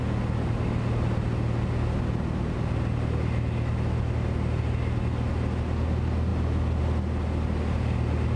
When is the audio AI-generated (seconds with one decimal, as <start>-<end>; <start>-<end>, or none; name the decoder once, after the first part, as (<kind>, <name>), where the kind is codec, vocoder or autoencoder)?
none